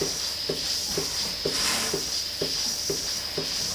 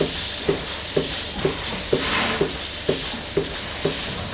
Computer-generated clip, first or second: second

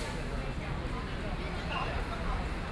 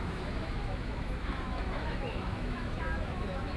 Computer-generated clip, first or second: second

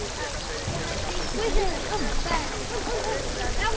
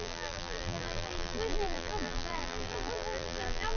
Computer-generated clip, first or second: second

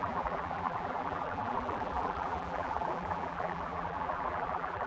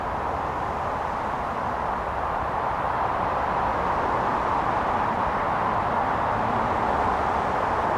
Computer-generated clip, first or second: first